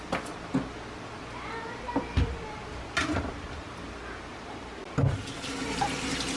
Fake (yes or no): no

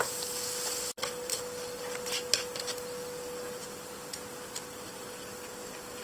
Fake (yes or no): no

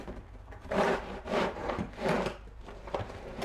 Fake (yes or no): yes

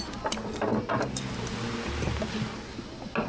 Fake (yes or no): no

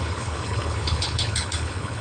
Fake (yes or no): yes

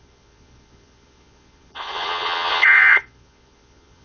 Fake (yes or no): yes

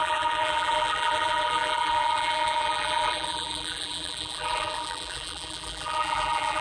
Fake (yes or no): yes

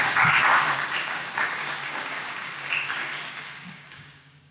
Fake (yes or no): yes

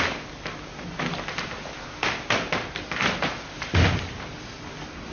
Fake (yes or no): no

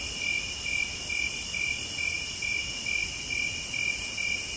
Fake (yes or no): no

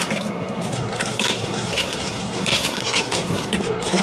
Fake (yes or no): yes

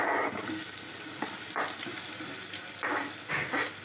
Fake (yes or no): no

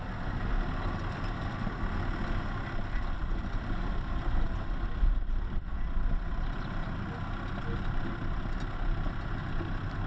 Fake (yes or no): no